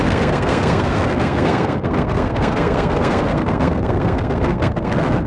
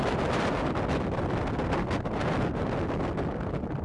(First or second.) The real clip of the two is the second